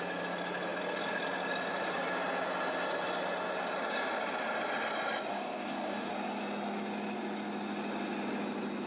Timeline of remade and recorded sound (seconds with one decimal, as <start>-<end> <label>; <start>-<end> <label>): 0.0-5.3 recorded; 5.3-6.1 remade; 6.1-8.9 recorded